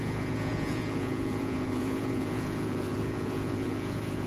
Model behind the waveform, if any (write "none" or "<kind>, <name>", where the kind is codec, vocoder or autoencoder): vocoder, Vocos